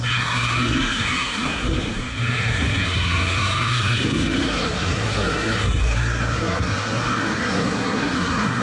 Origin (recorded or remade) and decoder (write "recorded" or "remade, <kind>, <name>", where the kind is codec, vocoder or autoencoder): remade, codec, SNAC